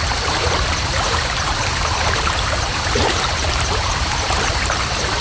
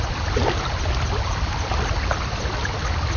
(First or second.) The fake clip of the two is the first